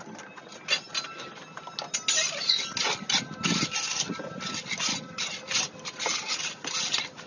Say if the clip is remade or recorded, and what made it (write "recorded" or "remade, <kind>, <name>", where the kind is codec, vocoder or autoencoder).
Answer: recorded